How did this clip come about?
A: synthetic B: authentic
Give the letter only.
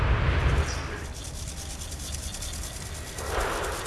B